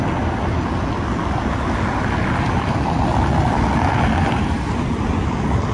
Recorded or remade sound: recorded